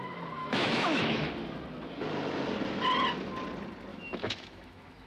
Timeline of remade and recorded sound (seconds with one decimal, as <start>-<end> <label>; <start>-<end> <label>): 0.0-0.4 recorded; 0.4-1.3 remade; 1.3-3.9 recorded; 3.9-5.1 remade